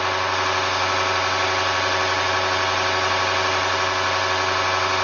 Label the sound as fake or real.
real